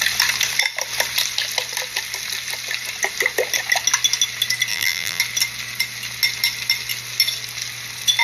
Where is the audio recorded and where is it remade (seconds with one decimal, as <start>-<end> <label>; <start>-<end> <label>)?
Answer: 0.0-4.7 recorded; 4.7-5.2 remade; 5.2-8.2 recorded